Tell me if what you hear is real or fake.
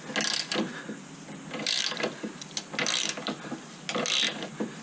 real